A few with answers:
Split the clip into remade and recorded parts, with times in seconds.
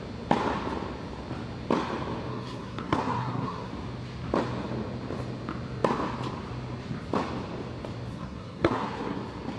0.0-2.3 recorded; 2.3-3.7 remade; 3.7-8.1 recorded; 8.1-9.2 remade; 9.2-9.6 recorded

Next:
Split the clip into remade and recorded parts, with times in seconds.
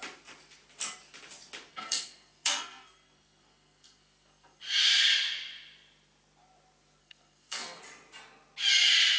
0.0-1.7 recorded; 1.7-4.6 remade; 4.6-7.0 recorded; 7.0-7.8 remade; 7.8-9.2 recorded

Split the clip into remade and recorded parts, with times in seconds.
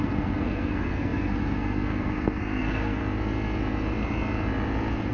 0.0-3.0 remade; 3.0-5.1 recorded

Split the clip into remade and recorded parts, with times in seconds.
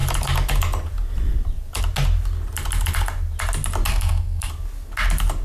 0.0-3.9 recorded; 3.9-4.5 remade; 4.5-5.4 recorded